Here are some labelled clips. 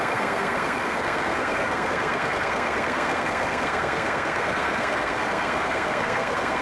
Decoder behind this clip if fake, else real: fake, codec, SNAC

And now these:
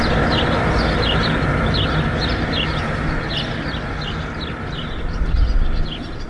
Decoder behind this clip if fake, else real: real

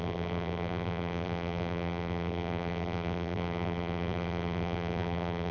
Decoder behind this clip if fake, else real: fake, vocoder, BigVGAN v2